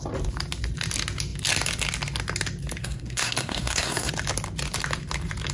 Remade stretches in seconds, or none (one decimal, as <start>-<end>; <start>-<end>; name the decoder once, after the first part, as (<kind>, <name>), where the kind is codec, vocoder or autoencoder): 2.8-4.1 (codec, SNAC)

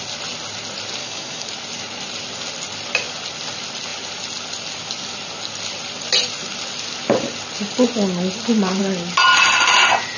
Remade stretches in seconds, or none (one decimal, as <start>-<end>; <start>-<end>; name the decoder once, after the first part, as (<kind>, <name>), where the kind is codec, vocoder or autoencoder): 1.0-1.5 (codec, DAC)

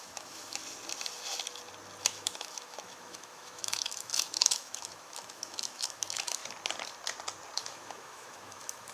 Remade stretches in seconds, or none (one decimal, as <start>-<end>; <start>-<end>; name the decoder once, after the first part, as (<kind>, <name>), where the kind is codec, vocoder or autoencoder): 0.0-0.6 (autoencoder, DAC-VAE); 2.0-6.4; 7.6-8.9

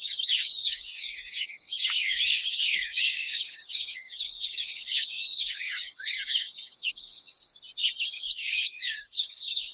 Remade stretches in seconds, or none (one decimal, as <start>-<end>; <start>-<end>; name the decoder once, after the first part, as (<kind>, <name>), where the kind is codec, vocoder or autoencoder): 0.0-7.5 (codec, DAC); 8.1-9.7